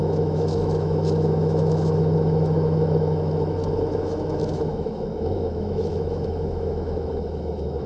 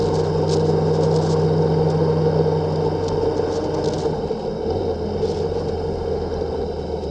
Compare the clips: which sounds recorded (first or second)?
second